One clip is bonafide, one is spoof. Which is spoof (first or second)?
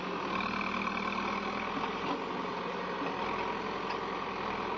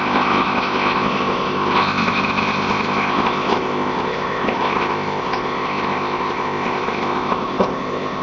second